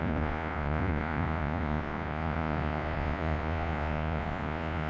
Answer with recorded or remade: remade